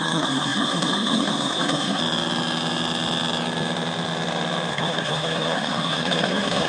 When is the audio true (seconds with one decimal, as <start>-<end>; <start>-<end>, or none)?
2.0-4.7